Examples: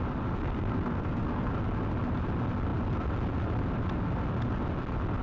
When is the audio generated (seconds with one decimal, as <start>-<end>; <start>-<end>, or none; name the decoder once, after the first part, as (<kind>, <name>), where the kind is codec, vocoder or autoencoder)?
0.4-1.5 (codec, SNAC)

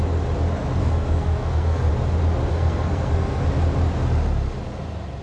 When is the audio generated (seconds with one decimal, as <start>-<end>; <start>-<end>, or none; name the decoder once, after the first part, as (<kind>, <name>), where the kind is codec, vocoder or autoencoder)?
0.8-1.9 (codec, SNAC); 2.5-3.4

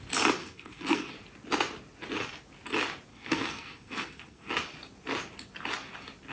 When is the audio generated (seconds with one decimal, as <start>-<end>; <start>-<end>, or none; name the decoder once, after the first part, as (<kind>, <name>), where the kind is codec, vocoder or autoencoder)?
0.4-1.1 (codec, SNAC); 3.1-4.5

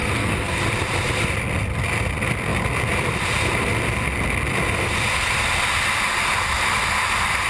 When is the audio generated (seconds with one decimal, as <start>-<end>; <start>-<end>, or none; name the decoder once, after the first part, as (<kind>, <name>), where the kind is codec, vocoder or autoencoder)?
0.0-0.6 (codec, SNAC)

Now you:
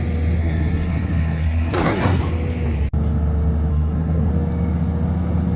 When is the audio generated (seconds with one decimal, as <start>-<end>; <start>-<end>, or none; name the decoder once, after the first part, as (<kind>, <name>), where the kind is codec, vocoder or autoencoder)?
0.4-2.2 (codec, SNAC); 3.7-4.3

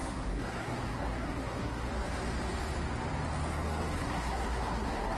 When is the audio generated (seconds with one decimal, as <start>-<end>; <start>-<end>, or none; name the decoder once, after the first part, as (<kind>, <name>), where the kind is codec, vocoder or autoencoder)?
0.0-1.9 (codec, SNAC); 3.5-5.2

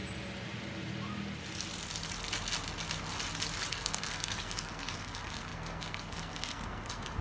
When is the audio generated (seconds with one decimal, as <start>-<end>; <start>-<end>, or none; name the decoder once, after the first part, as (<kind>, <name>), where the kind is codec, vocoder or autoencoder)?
3.7-7.2 (codec, SNAC)

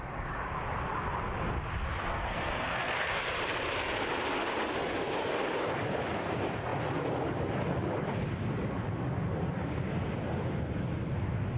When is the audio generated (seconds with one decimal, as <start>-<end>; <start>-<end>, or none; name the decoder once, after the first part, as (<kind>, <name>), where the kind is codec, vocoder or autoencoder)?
2.1-3.2 (codec, SNAC)